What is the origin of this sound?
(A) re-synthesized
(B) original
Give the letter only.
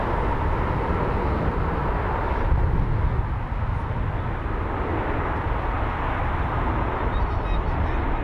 B